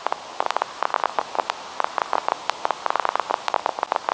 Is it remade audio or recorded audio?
recorded